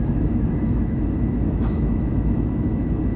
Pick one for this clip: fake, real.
fake